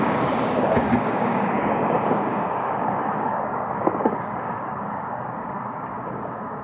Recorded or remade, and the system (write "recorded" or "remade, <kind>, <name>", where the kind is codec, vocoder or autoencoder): remade, codec, DAC